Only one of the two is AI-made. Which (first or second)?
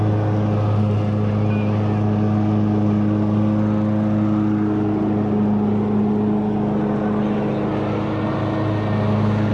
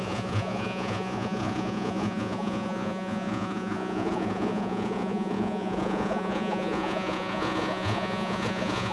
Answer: second